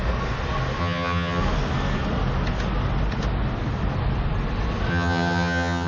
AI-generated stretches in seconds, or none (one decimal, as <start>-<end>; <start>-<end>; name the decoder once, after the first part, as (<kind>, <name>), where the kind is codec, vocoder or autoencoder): 0.8-1.4 (vocoder, HiFi-GAN); 4.9-5.9